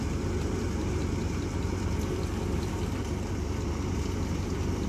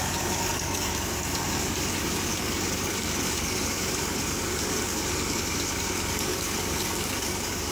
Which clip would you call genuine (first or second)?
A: first